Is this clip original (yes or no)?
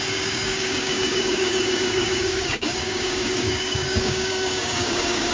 no